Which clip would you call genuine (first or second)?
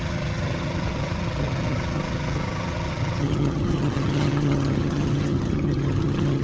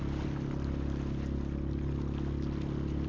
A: second